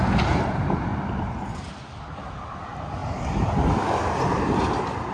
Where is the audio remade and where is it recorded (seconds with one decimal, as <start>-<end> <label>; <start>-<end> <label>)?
0.0-5.1 recorded